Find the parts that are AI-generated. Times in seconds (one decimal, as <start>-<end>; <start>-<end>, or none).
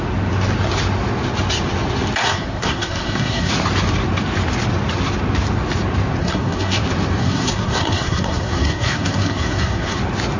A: 2.2-3.5; 6.2-6.8; 7.2-10.0